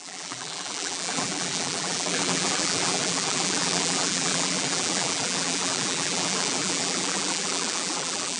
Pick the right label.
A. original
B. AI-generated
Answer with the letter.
B